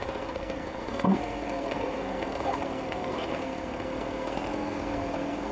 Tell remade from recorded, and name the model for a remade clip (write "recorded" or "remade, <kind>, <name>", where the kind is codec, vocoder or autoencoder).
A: remade, codec, SNAC